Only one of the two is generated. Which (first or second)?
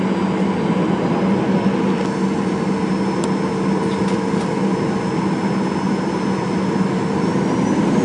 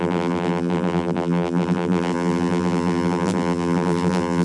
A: second